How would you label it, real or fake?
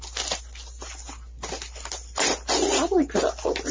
real